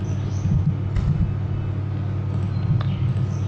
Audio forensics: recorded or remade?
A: recorded